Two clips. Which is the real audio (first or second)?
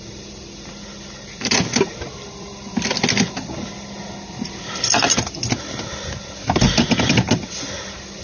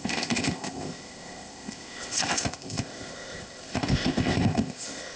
first